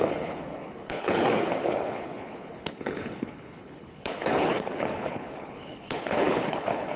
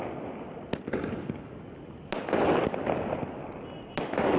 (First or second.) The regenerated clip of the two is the first